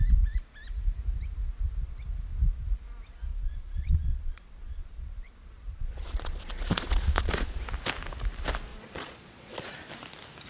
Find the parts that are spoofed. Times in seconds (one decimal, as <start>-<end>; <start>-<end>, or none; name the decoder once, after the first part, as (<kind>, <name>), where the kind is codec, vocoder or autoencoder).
3.3-7.6 (vocoder, Vocos); 8.7-9.7